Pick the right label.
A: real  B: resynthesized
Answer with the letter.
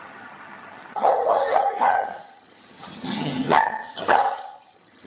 B